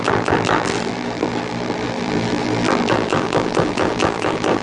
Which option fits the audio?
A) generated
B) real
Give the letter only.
A